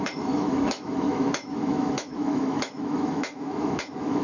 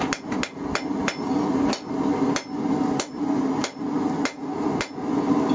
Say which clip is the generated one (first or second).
first